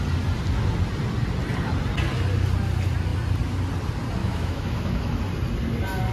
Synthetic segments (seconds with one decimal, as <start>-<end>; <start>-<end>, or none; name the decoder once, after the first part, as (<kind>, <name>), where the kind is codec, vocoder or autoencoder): 4.2-5.2 (autoencoder, DAC-VAE)